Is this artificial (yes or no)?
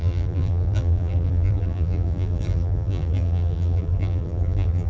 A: yes